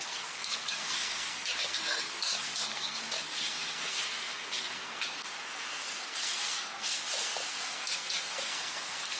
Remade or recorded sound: remade